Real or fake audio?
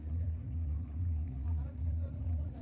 fake